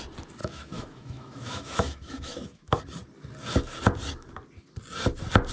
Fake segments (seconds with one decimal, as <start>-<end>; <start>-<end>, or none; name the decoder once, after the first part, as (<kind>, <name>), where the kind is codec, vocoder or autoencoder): 0.4-2.8 (autoencoder, DAC-VAE)